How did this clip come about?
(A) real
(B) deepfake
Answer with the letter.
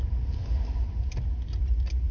A